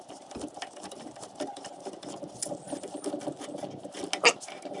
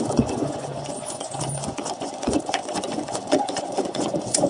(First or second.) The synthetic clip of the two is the second